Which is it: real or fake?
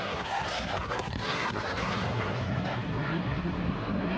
fake